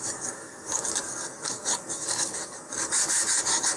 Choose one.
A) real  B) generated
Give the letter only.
B